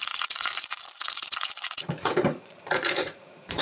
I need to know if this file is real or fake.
fake